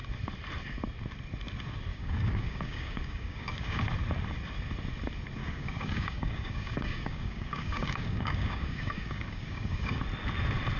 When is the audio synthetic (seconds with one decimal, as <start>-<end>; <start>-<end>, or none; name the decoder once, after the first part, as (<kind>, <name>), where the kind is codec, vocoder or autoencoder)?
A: 1.9-3.8 (codec, DAC); 5.4-10.0